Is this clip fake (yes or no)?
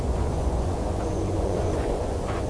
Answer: yes